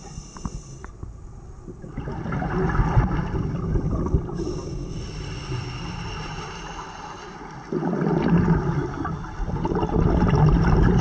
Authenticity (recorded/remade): recorded